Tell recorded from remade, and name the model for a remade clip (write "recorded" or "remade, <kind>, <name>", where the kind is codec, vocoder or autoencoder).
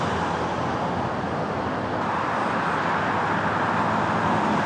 recorded